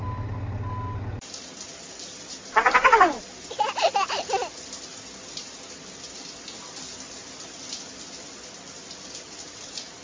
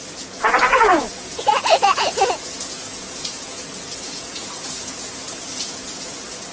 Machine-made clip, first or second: second